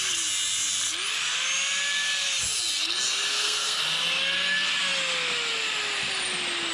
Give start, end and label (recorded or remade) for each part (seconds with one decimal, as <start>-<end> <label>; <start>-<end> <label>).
0.0-3.3 recorded; 3.3-3.8 remade; 3.8-6.7 recorded